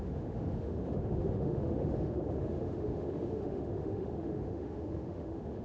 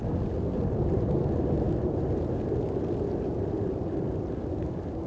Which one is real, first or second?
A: second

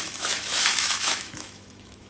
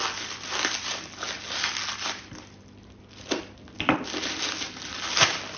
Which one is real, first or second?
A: second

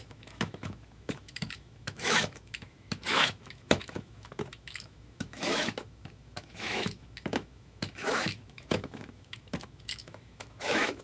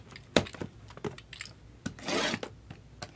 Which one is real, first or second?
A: second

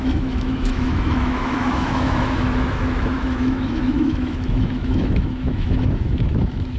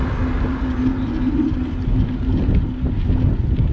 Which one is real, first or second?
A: second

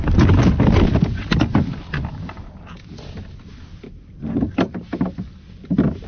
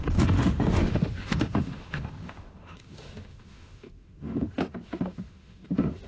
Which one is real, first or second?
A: first